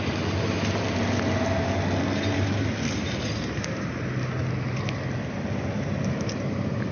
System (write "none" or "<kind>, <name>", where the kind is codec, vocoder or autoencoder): none